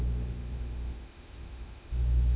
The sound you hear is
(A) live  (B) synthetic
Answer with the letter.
B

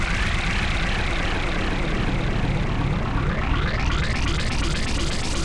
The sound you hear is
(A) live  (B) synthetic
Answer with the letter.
A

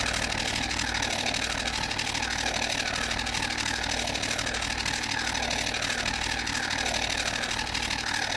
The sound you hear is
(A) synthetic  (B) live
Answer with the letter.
B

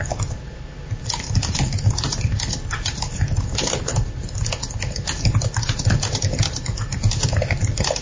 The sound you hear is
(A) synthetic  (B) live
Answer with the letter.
B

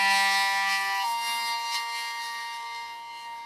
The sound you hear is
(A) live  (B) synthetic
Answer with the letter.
B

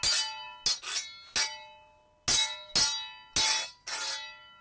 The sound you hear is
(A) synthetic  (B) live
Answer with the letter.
B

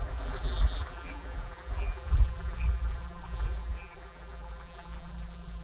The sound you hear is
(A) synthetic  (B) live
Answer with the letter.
A